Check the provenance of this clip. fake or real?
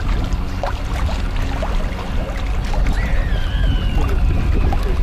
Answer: real